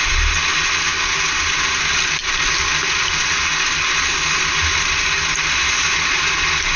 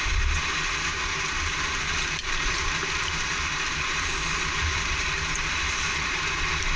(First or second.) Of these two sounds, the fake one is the second